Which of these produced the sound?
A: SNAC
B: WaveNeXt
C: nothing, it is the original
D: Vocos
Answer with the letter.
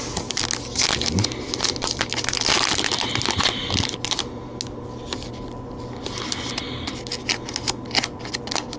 C